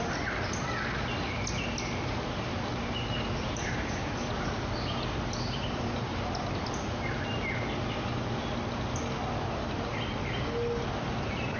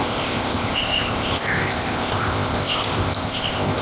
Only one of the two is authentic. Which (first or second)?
first